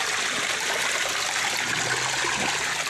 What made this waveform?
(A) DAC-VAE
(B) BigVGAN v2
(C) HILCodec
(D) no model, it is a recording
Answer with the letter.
D